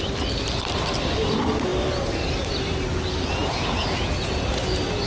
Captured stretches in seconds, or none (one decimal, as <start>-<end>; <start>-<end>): 0.0-3.4; 4.1-5.1